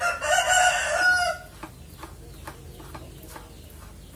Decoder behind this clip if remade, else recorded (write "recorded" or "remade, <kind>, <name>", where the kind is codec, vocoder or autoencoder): recorded